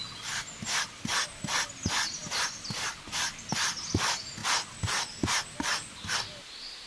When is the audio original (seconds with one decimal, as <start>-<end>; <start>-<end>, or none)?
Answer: 0.0-6.9